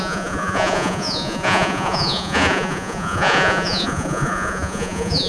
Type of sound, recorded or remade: remade